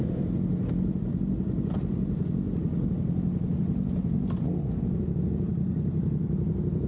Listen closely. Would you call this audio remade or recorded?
recorded